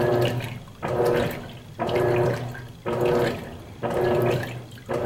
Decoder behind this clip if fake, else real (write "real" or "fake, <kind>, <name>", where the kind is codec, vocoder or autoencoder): real